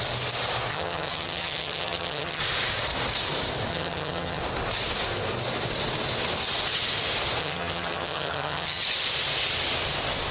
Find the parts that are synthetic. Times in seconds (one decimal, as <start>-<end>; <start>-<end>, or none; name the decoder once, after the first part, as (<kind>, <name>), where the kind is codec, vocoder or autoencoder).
0.7-2.4 (vocoder, HiFi-GAN); 3.7-4.4; 7.4-8.8